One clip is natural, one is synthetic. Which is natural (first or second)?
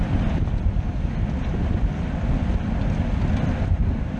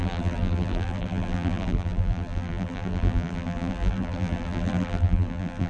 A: first